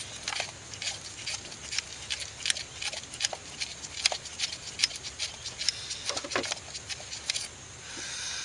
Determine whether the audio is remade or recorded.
recorded